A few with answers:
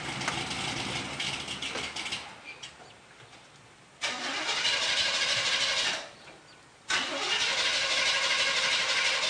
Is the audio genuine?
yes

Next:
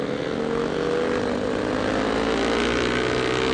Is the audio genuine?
yes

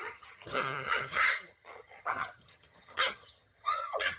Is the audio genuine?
no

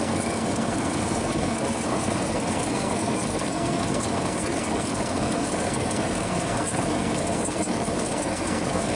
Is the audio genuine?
no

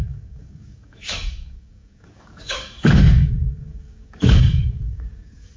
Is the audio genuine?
no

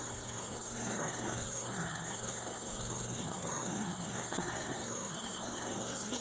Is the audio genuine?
no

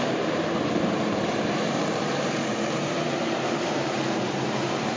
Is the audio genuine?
no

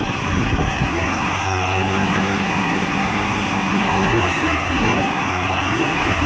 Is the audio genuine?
no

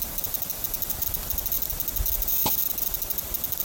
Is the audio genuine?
yes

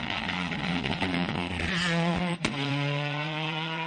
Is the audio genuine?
no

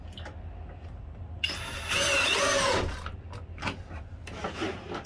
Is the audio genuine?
yes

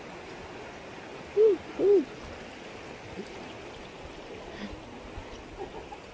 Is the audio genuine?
yes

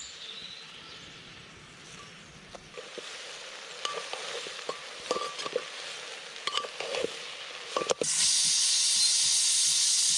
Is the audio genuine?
yes